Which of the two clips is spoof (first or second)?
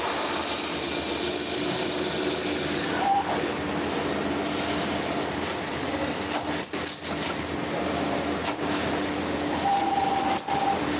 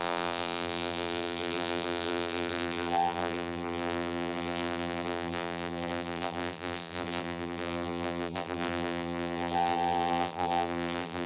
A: second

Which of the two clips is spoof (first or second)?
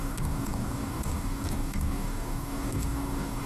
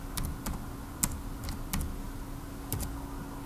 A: first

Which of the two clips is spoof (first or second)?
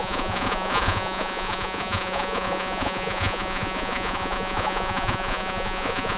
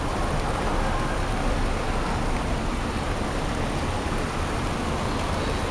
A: first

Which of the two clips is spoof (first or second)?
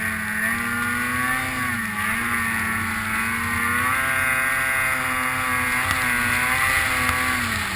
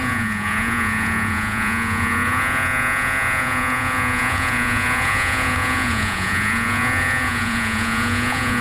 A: second